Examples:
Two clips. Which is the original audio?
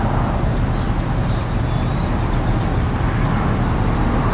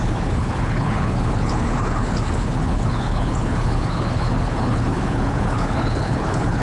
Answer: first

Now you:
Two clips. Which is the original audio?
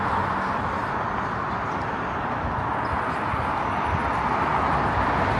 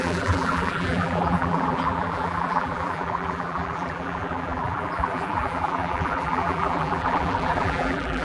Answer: first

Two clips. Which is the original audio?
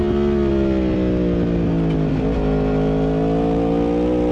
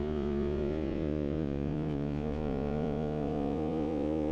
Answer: first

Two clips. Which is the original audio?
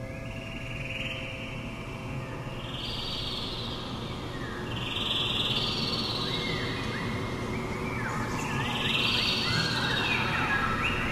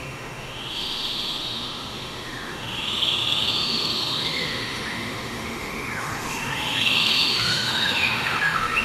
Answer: first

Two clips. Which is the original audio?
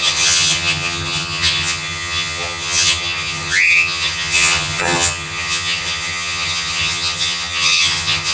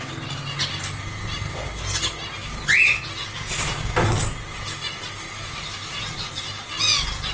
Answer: second